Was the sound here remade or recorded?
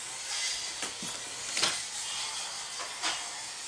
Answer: recorded